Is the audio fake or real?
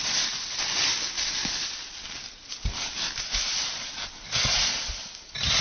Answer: real